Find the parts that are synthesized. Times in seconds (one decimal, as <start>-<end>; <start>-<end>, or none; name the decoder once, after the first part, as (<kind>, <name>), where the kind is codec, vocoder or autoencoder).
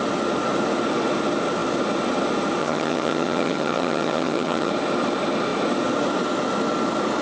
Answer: 2.6-4.7 (vocoder, HiFi-GAN)